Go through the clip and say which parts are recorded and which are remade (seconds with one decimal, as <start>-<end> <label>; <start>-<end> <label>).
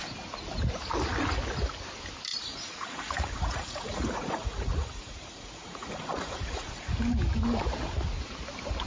0.0-2.3 recorded; 2.3-6.9 remade; 6.9-8.9 recorded